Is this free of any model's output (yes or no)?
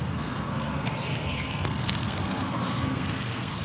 no